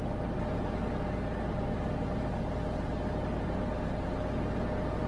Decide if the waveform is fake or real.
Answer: real